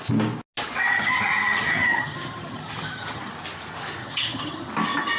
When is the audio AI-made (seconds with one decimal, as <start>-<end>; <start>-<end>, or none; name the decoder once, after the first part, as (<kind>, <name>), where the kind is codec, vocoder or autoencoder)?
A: 0.9-3.3 (vocoder, HiFi-GAN); 4.0-4.7